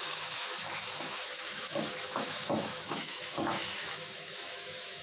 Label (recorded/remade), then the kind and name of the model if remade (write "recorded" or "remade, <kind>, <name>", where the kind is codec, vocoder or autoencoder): remade, autoencoder, DAC-VAE